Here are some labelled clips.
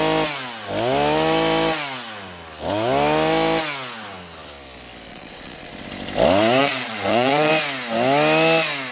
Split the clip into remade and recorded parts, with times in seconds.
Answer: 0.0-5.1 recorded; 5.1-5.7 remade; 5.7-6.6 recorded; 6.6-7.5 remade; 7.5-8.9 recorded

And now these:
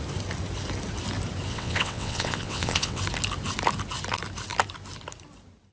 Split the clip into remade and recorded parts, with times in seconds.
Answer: 0.0-1.5 recorded; 1.5-3.0 remade; 3.0-5.7 recorded

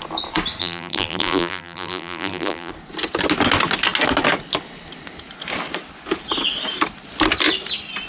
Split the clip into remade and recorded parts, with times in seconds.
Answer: 0.0-0.6 recorded; 0.6-2.7 remade; 2.7-8.1 recorded

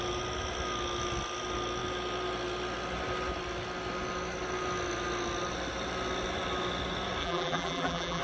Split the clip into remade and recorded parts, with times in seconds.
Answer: 0.0-7.2 recorded; 7.2-8.2 remade

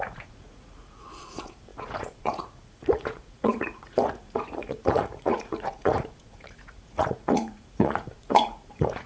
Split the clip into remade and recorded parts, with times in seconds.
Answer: 0.0-9.1 remade

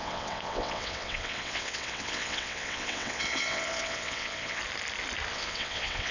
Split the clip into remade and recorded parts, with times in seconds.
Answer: 0.0-4.6 remade; 4.6-5.3 recorded; 5.3-6.1 remade

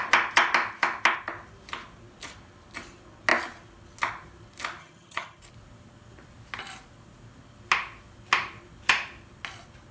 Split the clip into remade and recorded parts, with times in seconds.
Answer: 0.0-4.8 recorded; 4.8-5.4 remade; 5.4-9.9 recorded